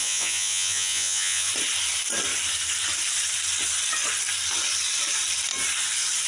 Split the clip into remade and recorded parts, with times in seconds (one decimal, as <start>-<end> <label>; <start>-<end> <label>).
0.0-1.5 remade; 1.5-6.3 recorded